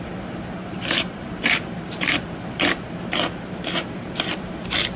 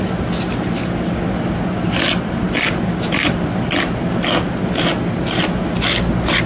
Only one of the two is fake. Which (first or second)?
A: first